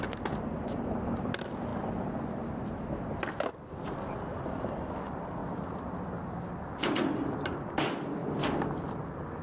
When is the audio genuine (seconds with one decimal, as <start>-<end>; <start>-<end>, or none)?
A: 0.0-9.4